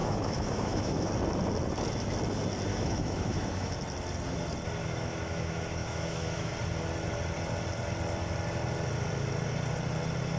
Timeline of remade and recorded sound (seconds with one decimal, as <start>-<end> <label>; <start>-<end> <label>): 0.0-1.1 remade; 1.1-2.7 recorded; 2.7-3.7 remade; 3.7-4.8 recorded; 4.8-6.5 remade; 6.5-10.4 recorded